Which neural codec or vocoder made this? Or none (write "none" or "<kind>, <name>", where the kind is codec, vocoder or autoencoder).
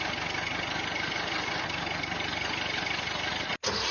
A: none